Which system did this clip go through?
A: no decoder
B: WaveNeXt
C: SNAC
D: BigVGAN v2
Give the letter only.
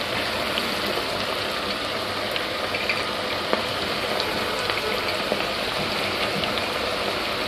D